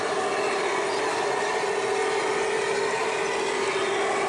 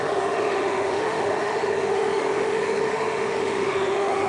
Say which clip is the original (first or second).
first